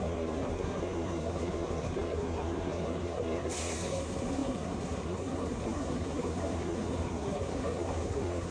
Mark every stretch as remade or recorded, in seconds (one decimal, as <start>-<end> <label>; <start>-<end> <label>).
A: 0.0-8.5 remade